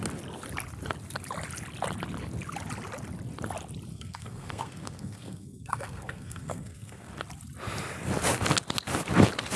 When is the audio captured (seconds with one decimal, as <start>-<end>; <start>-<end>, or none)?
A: 0.0-3.9; 7.1-9.6